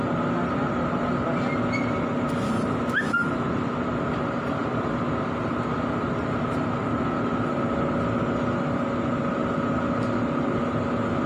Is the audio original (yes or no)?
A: yes